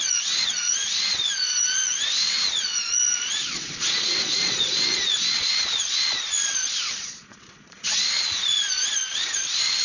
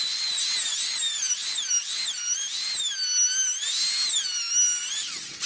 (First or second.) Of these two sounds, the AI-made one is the first